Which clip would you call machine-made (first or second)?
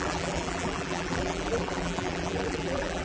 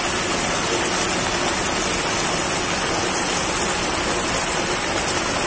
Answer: first